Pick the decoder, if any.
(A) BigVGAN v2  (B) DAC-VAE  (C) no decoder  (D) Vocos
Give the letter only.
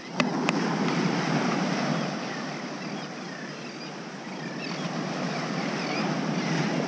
C